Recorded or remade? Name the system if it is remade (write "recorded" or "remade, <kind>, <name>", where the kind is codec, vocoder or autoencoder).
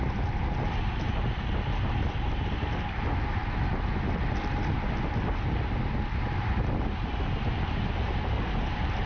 recorded